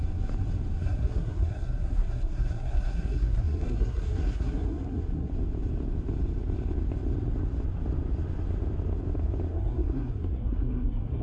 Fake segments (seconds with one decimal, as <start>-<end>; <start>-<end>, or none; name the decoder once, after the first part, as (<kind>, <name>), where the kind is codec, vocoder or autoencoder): 0.8-5.3 (codec, SNAC); 9.5-11.2